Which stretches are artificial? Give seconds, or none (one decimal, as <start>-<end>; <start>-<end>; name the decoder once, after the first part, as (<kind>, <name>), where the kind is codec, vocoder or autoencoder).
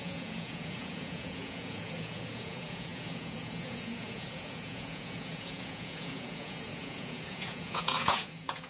0.0-8.7 (vocoder, Vocos)